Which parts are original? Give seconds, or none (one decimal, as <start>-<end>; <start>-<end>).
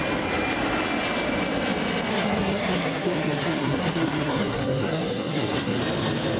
0.0-2.1; 5.8-6.4